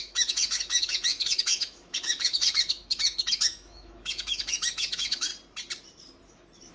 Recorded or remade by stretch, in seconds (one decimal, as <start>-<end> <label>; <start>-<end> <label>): 0.0-5.3 remade; 5.3-6.7 recorded